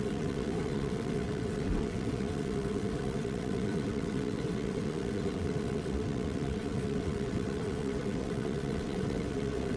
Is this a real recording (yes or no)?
no